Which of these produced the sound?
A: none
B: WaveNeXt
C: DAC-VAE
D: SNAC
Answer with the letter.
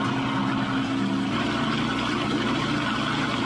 A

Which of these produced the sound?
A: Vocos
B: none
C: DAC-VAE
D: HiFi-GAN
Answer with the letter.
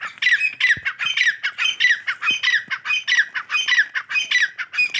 B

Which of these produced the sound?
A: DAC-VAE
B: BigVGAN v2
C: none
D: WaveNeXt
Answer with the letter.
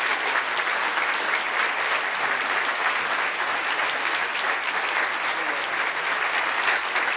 C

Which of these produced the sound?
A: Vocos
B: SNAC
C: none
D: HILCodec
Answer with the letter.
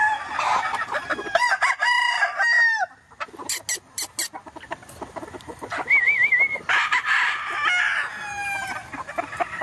C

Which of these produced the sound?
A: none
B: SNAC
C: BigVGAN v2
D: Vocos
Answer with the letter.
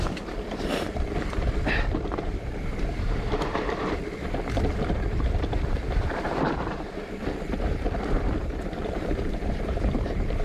C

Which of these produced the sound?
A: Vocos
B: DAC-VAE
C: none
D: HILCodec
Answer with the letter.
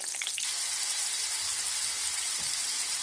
C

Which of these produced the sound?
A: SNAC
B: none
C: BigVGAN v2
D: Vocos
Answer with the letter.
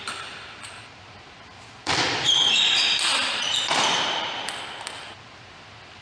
B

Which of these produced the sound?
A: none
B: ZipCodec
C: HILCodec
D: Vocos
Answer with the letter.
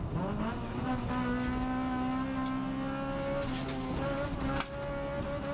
A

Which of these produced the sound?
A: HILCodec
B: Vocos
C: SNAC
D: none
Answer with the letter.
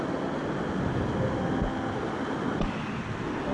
D